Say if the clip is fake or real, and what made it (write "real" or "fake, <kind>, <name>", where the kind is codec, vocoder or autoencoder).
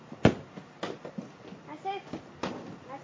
real